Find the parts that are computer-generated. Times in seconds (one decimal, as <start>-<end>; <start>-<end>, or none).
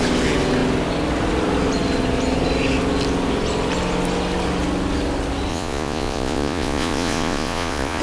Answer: 5.5-8.0